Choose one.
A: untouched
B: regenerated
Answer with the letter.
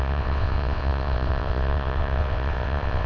B